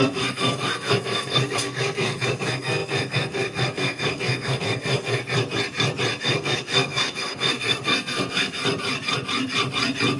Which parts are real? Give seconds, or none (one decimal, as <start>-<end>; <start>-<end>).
5.2-6.2; 8.6-10.2